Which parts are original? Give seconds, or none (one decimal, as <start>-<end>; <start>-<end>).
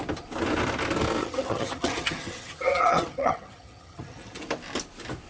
0.0-1.2; 4.4-5.3